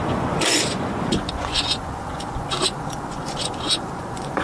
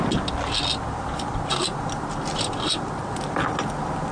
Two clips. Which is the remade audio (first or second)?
first